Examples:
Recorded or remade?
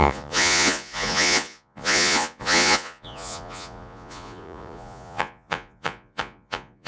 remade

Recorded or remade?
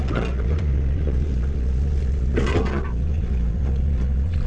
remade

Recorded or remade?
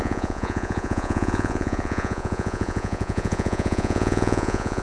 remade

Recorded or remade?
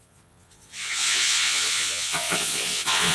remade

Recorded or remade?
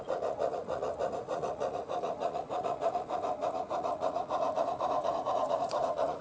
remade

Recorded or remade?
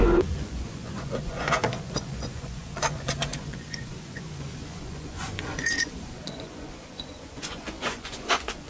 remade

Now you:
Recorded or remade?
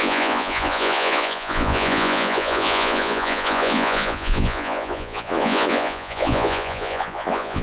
remade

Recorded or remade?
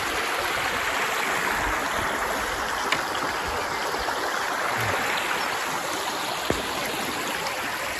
recorded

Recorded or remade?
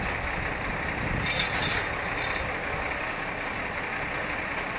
recorded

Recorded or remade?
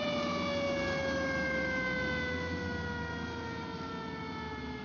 recorded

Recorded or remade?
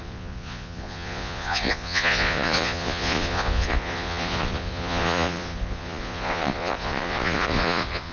remade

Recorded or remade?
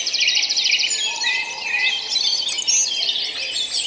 recorded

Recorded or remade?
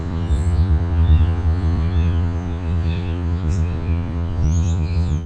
remade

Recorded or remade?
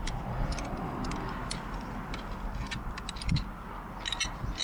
recorded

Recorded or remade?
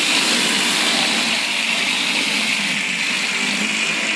recorded